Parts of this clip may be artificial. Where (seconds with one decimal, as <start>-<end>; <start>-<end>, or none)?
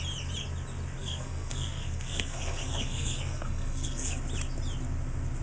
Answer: 1.0-4.2